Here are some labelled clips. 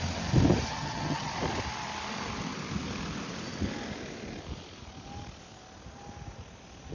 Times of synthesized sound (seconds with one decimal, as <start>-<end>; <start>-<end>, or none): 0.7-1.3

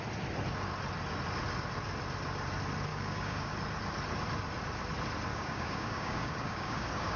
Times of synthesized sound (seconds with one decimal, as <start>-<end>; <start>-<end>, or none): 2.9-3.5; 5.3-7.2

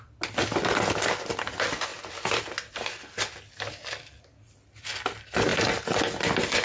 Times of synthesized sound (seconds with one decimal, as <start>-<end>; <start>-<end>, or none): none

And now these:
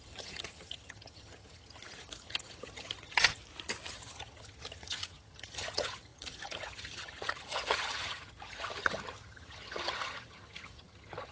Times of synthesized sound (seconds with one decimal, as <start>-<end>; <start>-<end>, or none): 0.0-3.4; 3.9-11.3

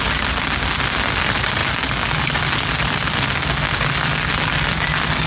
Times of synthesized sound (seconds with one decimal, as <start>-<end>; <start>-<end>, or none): none

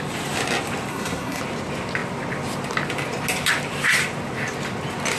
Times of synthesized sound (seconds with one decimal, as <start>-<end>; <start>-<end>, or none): 0.9-1.4

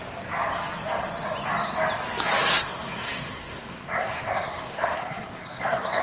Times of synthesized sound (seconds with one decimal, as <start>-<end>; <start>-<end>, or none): 2.5-6.0